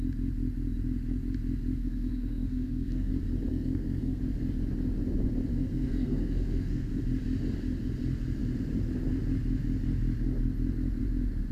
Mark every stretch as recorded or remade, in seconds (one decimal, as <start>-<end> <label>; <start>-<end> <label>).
0.0-1.8 recorded; 1.8-3.1 remade; 3.1-3.5 recorded; 3.5-4.2 remade; 4.2-5.5 recorded; 5.5-7.0 remade; 7.0-11.5 recorded